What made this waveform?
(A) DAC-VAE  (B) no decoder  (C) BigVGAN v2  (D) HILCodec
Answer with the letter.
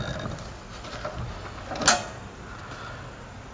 B